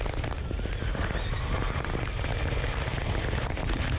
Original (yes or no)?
yes